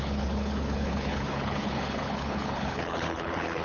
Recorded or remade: remade